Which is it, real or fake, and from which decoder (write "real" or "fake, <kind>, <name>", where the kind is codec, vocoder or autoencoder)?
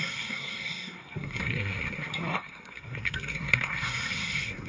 fake, codec, SNAC